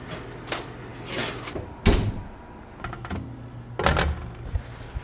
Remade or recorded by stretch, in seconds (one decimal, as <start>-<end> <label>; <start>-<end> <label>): 0.0-5.0 recorded